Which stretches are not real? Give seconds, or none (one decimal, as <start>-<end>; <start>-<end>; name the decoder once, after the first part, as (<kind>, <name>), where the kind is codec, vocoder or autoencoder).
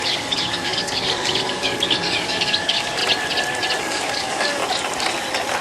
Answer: 0.0-3.0 (codec, DAC); 3.8-4.6